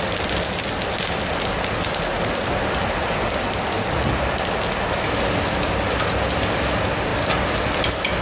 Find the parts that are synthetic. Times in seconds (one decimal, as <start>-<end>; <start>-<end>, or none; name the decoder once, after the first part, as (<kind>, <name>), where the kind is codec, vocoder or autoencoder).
none